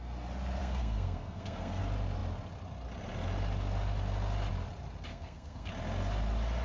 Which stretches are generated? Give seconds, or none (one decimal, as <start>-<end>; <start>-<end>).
0.6-1.8; 5.1-5.7